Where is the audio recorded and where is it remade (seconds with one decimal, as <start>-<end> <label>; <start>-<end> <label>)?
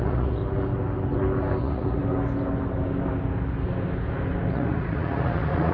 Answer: 0.0-0.4 remade; 0.4-1.6 recorded; 1.6-2.0 remade; 2.0-4.5 recorded; 4.5-5.7 remade